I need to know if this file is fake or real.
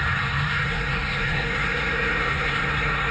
fake